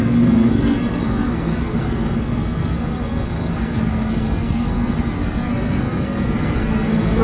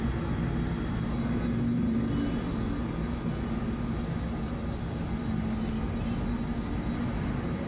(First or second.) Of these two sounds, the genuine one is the second